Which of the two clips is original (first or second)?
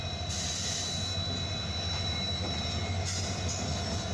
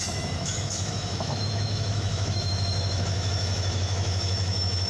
first